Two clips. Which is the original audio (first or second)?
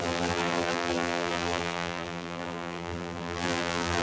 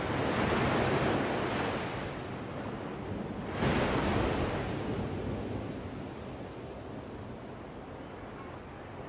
second